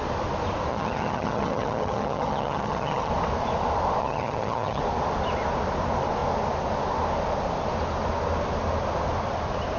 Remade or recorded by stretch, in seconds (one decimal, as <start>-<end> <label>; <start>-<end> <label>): 0.0-0.7 recorded; 0.7-3.1 remade; 3.1-4.0 recorded; 4.0-4.8 remade; 4.8-9.8 recorded